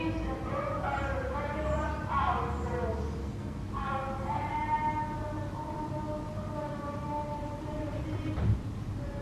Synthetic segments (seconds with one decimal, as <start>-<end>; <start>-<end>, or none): 3.2-3.7